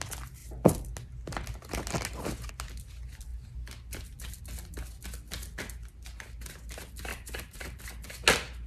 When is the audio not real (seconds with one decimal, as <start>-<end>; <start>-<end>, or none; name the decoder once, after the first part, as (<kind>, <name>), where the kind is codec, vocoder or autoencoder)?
7.1-7.8 (vocoder, BigVGAN v2)